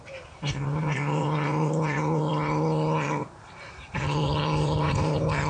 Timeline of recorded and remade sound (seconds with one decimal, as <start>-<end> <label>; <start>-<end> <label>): 0.0-2.3 remade; 2.3-3.2 recorded; 3.2-5.5 remade